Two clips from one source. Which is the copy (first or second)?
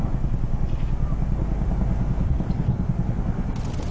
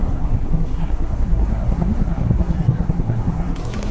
second